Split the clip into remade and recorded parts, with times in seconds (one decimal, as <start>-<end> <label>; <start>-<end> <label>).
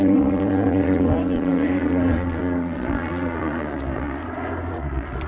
0.0-4.2 remade; 4.2-4.7 recorded; 4.7-5.3 remade